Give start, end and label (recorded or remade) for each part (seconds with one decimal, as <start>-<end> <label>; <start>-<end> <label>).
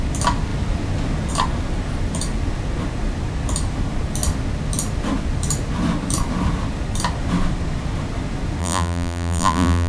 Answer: 0.0-8.6 recorded; 8.6-9.9 remade